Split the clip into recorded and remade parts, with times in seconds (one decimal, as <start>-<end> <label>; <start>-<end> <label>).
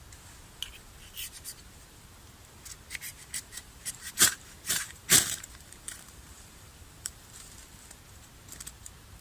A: 0.0-3.1 recorded; 3.1-7.9 remade; 7.9-9.2 recorded